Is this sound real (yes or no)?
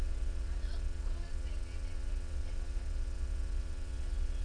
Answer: no